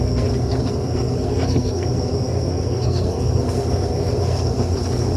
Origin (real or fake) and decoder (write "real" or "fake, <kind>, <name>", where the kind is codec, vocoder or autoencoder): fake, codec, SNAC